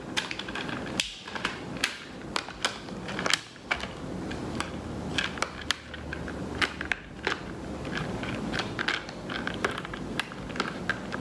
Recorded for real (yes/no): yes